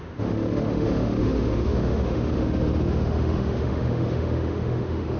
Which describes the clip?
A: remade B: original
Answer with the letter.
A